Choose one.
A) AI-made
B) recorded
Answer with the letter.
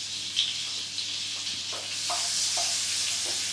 B